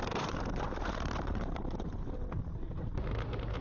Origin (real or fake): fake